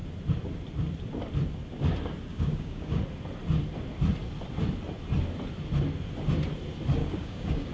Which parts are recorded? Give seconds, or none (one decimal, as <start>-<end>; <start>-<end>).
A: 0.0-2.3; 3.0-7.0